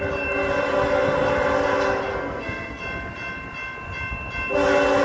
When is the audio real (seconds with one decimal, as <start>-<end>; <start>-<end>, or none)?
0.0-2.1; 2.8-5.0